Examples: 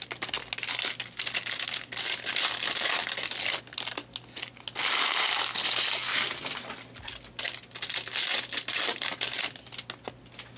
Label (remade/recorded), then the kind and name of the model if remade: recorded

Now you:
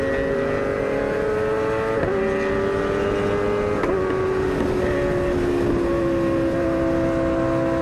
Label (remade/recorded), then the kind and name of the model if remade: recorded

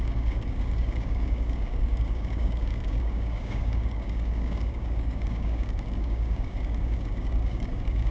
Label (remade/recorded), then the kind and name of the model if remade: remade, codec, DAC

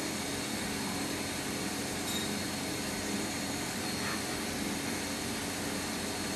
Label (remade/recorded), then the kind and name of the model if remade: recorded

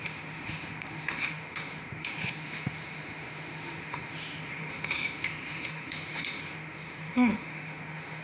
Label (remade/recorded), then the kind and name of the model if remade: remade, autoencoder, DAC-VAE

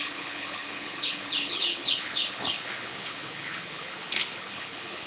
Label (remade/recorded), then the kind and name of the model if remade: remade, codec, HILCodec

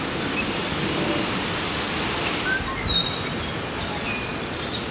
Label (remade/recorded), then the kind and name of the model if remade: recorded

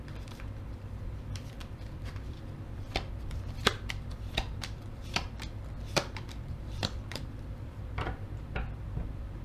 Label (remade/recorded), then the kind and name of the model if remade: remade, vocoder, BigVGAN v2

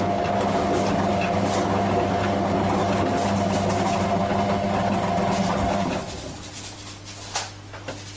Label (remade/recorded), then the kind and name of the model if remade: recorded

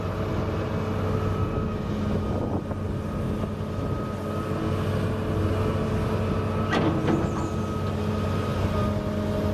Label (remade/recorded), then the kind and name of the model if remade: recorded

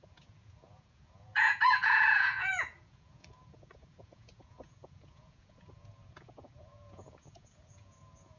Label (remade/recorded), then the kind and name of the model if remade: remade, vocoder, Vocos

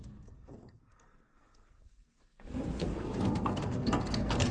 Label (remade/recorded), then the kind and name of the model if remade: remade, codec, SNAC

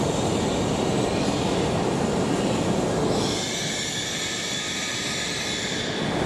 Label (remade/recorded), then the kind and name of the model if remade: recorded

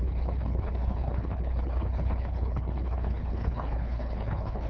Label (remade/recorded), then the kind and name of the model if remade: remade, codec, HILCodec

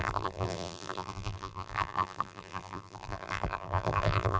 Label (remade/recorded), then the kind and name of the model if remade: remade, vocoder, BigVGAN v2